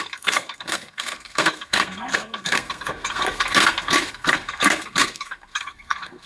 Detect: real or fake fake